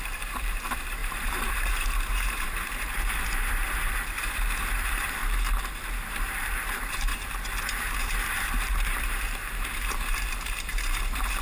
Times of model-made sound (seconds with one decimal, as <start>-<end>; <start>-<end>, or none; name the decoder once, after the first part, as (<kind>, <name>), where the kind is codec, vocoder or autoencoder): 0.0-5.2 (vocoder, BigVGAN v2); 6.1-7.1; 8.0-11.4